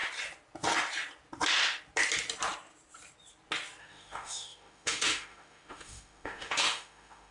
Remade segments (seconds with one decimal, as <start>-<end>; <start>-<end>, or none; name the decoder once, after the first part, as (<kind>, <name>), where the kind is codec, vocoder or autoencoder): 3.8-7.3 (autoencoder, DAC-VAE)